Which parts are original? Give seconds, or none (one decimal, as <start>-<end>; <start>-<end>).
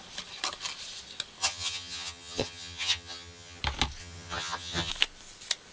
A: 0.0-1.4; 3.6-4.0; 4.9-5.7